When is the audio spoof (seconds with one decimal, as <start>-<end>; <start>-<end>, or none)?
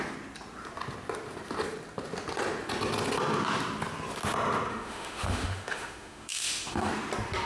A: 4.7-6.9